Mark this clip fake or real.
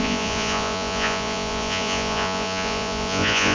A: fake